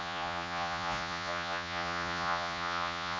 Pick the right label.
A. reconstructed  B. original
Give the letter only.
A